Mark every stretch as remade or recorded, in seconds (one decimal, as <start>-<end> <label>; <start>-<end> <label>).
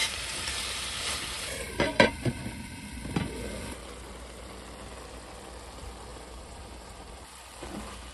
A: 0.0-2.1 remade; 2.1-6.1 recorded; 6.1-7.6 remade; 7.6-8.1 recorded